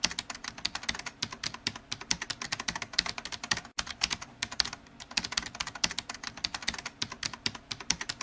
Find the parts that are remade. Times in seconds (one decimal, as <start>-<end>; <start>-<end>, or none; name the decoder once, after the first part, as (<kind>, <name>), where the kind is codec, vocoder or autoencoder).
none